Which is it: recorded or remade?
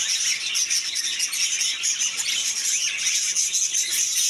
recorded